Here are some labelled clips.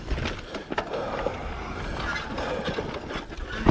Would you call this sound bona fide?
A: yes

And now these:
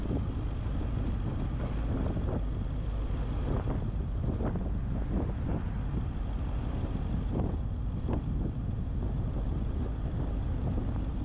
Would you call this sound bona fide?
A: yes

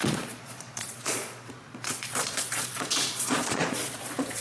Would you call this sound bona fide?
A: no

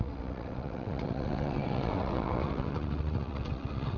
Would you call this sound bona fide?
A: no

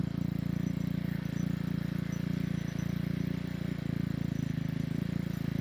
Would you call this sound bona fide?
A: yes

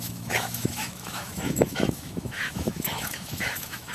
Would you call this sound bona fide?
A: no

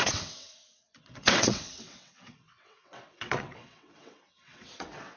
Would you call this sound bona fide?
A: no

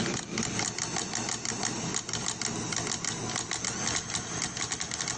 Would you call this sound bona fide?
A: yes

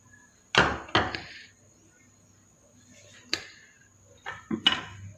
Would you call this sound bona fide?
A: yes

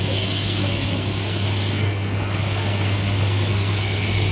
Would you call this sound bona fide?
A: no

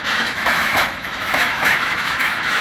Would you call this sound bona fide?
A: no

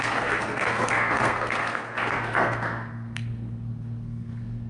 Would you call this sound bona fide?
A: no